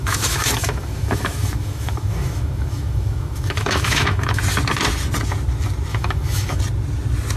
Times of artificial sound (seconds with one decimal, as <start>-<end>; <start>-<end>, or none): 0.0-4.4; 5.9-6.6